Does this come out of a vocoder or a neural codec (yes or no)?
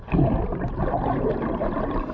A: no